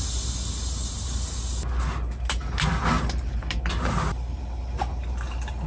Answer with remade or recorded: recorded